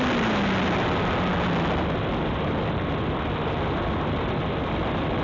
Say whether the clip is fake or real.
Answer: real